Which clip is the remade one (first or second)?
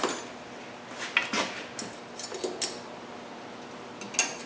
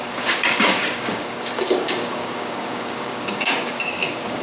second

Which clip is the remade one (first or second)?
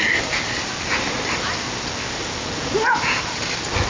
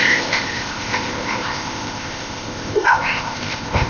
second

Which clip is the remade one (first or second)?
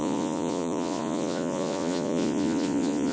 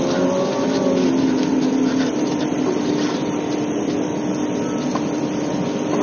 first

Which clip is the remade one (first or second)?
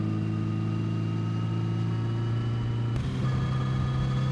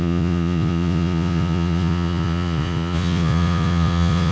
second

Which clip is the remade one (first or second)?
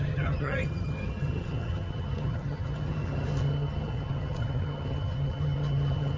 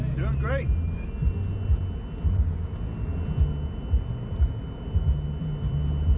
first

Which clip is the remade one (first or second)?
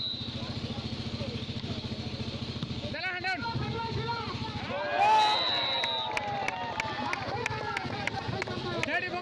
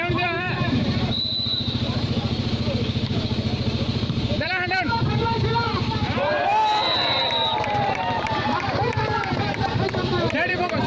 second